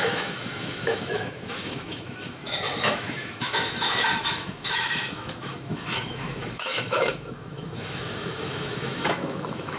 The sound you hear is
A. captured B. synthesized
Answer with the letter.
B